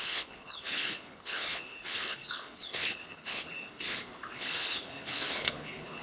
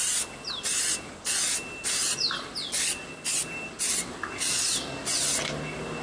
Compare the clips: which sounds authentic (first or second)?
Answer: second